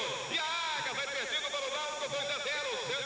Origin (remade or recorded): recorded